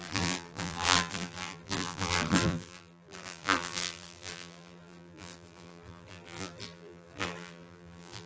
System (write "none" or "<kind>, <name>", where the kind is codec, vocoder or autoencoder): vocoder, BigVGAN v2